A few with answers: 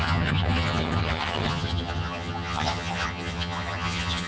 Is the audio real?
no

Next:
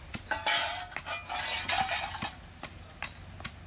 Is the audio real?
yes